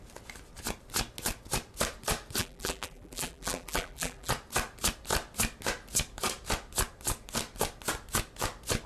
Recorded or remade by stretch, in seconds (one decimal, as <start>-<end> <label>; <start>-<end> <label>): 0.0-2.4 recorded; 2.4-4.3 remade; 4.3-8.9 recorded